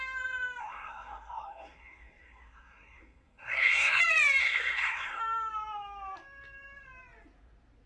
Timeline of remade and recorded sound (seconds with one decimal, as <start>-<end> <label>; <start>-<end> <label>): 0.0-0.6 recorded; 0.6-4.0 remade; 4.0-4.4 recorded; 4.4-5.2 remade; 5.2-7.9 recorded